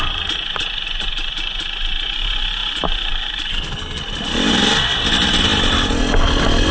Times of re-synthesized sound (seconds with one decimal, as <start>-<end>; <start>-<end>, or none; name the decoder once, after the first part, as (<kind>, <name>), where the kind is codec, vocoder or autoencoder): 3.5-4.0 (codec, SNAC)